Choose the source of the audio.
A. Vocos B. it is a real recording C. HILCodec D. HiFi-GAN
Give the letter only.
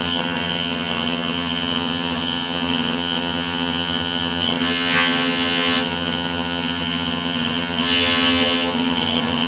D